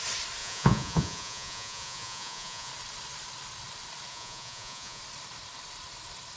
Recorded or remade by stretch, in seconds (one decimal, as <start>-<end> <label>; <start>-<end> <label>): 0.0-0.4 recorded; 0.4-2.7 remade; 2.7-4.1 recorded; 4.1-5.0 remade; 5.0-6.4 recorded